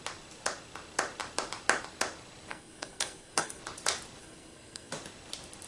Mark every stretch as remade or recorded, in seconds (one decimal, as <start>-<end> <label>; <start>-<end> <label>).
0.0-2.5 recorded; 2.5-3.6 remade; 3.6-4.2 recorded; 4.2-4.9 remade; 4.9-5.7 recorded